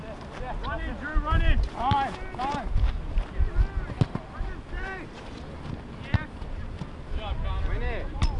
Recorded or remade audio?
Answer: recorded